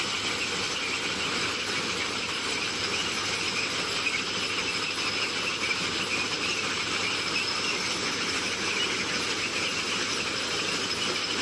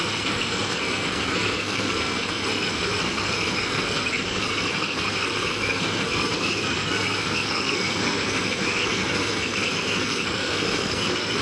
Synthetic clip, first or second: second